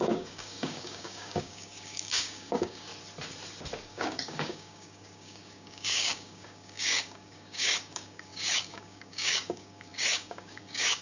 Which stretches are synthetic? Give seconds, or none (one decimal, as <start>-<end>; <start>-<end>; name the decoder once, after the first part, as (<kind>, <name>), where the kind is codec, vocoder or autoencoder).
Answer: 0.0-2.9 (codec, DAC); 3.9-11.0